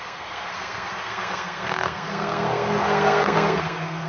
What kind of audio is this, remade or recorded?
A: remade